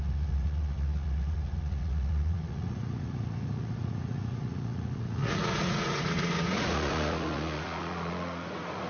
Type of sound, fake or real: fake